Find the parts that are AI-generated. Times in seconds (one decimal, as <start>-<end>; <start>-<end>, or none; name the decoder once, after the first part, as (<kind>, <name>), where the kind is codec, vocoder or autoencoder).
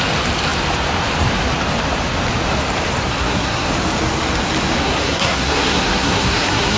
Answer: 3.1-3.7 (codec, SNAC); 4.8-6.8